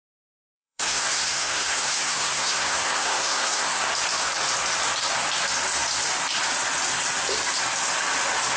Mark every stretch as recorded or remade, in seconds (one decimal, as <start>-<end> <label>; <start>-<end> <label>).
0.0-3.9 remade; 3.9-8.6 recorded